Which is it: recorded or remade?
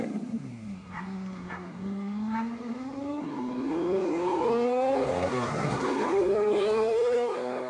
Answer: remade